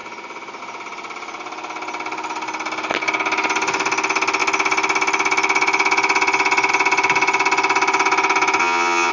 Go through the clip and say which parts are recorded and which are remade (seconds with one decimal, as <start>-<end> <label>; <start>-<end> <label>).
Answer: 0.0-8.6 recorded; 8.6-9.1 remade